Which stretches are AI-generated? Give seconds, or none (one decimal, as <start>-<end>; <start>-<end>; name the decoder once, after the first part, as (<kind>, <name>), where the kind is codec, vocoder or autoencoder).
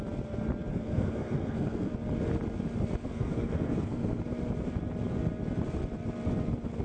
0.7-1.9 (codec, SNAC); 3.0-4.2